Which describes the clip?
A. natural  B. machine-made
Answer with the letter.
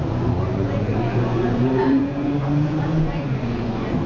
B